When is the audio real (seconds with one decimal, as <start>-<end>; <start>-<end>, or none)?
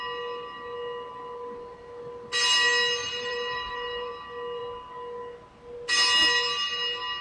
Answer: 0.0-3.0; 4.1-7.2